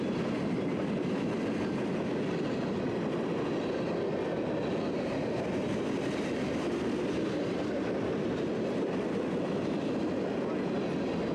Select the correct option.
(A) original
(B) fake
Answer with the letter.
A